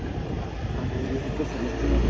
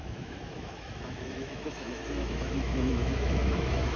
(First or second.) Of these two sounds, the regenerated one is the second